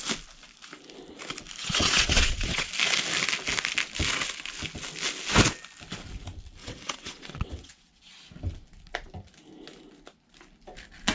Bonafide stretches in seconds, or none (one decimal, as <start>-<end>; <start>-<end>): 0.0-1.6; 2.7-6.6; 8.1-11.1